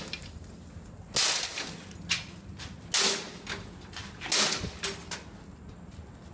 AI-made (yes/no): no